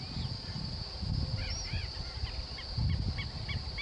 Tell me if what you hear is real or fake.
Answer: real